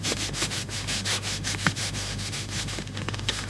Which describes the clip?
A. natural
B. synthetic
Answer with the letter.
B